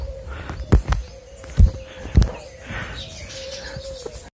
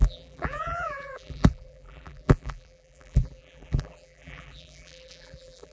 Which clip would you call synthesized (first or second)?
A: second